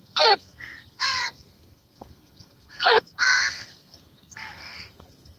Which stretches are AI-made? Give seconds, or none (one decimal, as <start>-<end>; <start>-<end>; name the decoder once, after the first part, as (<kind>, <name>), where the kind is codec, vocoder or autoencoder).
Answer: 0.0-5.4 (codec, SNAC)